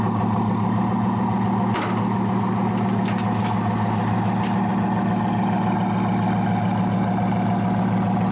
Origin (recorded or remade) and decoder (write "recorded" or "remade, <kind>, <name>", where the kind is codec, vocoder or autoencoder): recorded